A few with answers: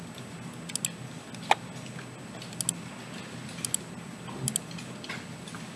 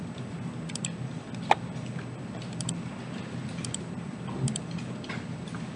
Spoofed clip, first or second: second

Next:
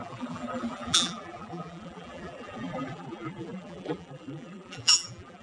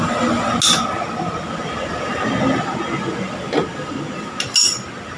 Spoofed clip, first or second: first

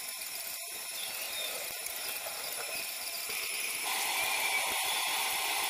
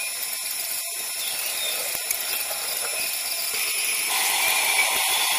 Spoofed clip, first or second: first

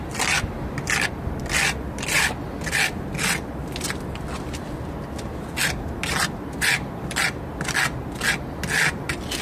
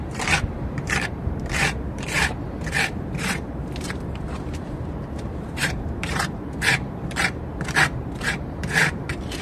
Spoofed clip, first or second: second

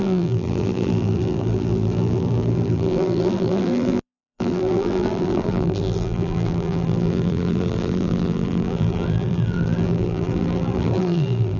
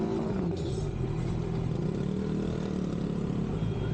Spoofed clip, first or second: first